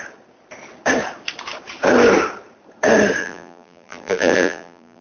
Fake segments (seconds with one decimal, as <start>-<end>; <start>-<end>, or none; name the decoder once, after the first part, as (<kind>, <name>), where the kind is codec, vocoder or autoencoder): 3.2-5.0 (vocoder, BigVGAN v2)